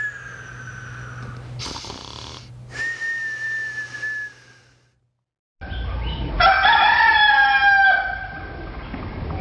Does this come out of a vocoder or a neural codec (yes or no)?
no